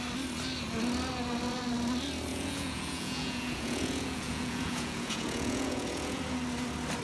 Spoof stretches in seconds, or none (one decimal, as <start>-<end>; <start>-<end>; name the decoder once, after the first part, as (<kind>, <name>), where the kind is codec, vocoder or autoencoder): 2.3-6.2 (vocoder, Vocos)